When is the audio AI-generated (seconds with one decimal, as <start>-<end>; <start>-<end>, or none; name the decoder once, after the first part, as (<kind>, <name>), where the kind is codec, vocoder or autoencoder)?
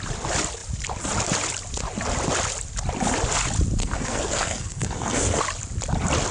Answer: 3.8-5.4 (codec, SNAC)